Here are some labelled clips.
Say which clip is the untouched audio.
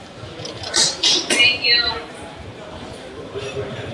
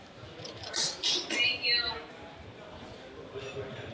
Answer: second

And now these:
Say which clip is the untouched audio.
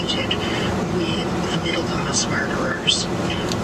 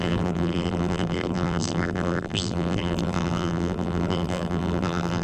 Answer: first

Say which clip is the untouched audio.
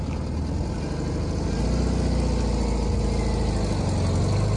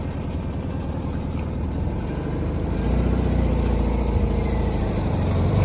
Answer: first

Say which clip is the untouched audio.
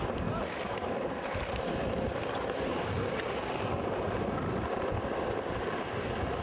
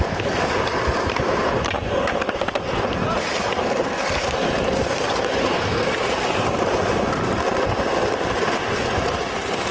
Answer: first